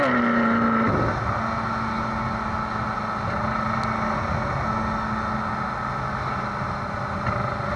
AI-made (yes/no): no